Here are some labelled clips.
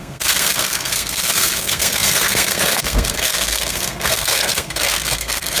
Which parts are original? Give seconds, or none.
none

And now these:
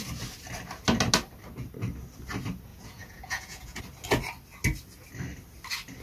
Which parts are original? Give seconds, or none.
0.0-2.7; 3.8-6.0

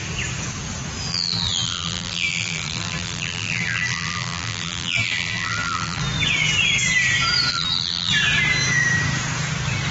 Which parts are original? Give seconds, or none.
0.0-1.1; 6.0-7.5; 8.1-9.9

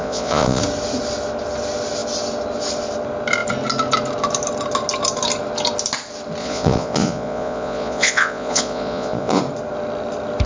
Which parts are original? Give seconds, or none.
0.6-6.4; 9.4-10.5

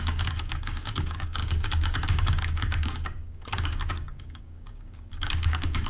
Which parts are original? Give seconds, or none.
none

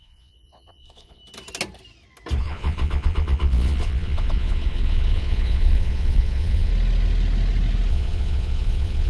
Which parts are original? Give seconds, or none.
1.2-2.4; 6.7-7.9